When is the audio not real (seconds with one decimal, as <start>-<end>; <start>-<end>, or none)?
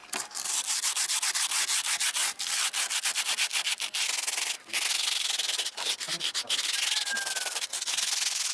none